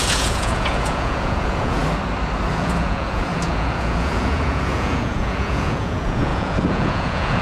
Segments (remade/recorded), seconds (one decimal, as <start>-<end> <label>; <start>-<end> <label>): 0.0-1.8 remade; 1.8-2.5 recorded; 2.5-7.4 remade